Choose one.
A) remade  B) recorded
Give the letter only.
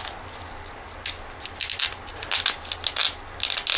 B